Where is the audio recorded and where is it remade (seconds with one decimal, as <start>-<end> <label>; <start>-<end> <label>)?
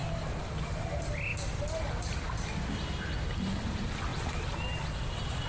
0.0-0.6 recorded; 0.6-1.3 remade; 1.3-3.4 recorded; 3.4-4.1 remade; 4.1-4.8 recorded; 4.8-5.5 remade